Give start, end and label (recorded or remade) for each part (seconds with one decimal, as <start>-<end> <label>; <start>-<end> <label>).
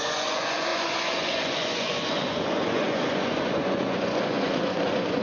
0.0-5.2 remade